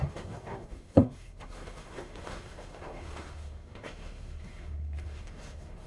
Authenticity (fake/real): fake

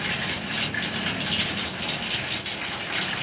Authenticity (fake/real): real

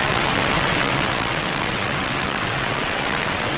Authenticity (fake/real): fake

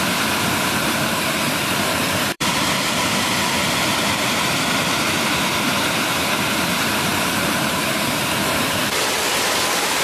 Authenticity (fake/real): fake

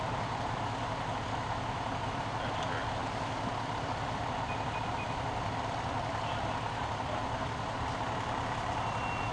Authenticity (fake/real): real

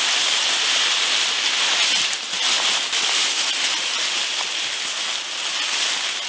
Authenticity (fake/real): real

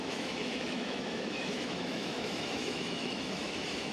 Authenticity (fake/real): fake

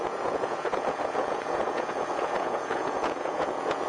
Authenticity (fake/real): fake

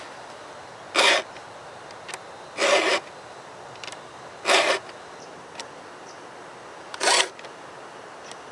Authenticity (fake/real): real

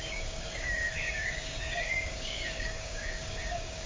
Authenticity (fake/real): fake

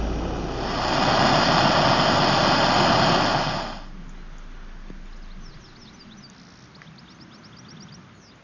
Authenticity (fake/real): real